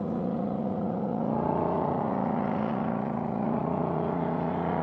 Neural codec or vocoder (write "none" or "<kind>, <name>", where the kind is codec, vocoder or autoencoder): vocoder, Vocos